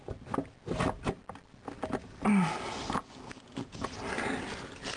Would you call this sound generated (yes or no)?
no